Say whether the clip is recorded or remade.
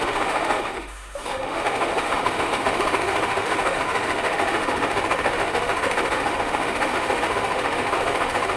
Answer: remade